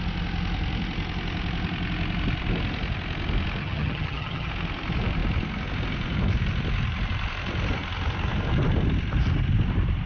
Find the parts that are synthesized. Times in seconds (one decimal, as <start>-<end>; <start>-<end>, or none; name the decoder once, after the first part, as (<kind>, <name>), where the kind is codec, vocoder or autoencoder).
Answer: 3.6-4.5 (vocoder, HiFi-GAN)

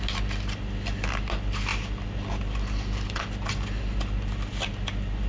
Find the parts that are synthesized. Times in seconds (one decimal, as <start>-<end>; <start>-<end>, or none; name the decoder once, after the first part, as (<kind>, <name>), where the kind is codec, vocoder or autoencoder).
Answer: none

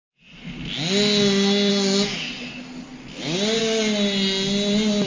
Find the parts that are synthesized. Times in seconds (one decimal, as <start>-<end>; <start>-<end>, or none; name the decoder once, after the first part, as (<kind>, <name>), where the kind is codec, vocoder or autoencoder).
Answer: none

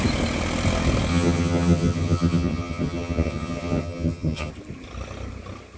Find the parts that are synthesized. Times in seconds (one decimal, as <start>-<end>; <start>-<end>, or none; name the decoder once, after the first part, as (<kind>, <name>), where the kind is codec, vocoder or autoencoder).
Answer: 1.1-4.5 (vocoder, HiFi-GAN)

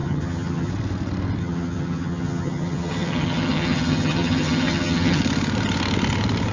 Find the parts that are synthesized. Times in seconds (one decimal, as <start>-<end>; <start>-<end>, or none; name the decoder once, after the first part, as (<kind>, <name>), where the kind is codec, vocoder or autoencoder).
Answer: 0.0-0.7 (vocoder, HiFi-GAN); 1.4-5.2